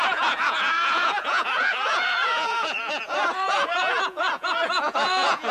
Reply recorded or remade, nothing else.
remade